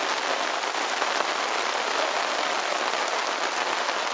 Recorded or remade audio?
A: recorded